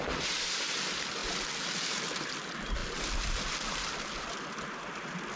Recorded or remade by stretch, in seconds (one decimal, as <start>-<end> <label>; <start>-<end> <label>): 0.0-5.4 recorded